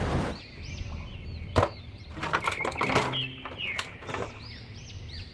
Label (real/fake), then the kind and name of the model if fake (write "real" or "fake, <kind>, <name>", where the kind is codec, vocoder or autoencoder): real